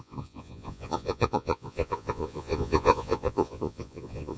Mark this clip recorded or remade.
remade